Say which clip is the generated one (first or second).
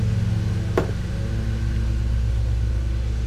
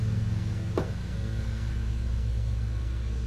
second